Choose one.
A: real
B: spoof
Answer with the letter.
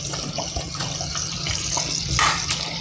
A